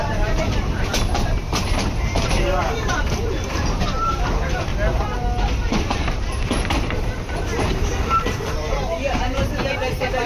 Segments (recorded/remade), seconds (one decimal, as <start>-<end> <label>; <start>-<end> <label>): 0.0-4.7 remade; 4.7-5.6 recorded; 5.6-10.3 remade